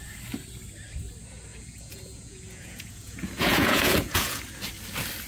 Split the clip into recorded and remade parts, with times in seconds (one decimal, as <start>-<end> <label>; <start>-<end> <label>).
0.0-1.5 recorded; 1.5-4.4 remade; 4.4-5.3 recorded